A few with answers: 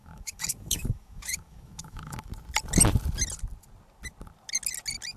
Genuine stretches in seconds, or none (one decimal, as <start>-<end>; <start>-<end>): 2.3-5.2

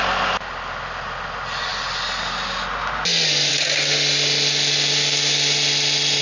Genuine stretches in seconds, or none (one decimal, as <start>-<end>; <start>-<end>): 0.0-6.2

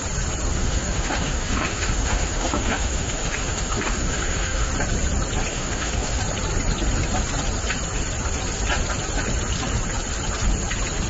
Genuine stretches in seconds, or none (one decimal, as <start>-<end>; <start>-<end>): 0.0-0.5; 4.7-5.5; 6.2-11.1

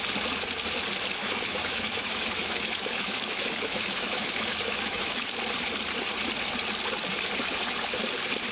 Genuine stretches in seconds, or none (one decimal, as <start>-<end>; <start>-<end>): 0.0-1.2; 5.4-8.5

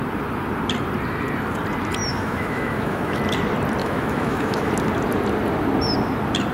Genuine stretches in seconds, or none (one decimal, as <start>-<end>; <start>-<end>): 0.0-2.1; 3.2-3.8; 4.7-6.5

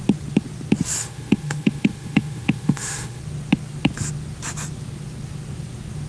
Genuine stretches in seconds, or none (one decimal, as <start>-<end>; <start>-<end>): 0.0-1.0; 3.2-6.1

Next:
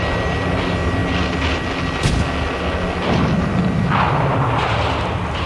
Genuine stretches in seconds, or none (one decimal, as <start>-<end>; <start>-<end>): 0.0-5.5

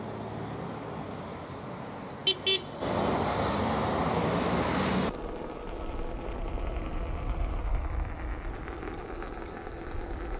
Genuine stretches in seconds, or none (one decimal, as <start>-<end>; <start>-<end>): 0.0-7.7; 8.5-10.4